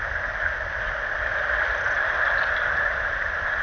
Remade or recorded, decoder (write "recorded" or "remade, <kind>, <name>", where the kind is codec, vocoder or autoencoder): recorded